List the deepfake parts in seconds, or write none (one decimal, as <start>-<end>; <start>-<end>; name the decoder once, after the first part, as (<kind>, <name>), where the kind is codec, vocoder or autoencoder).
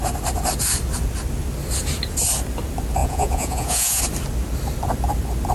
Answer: 3.0-4.0 (vocoder, Vocos)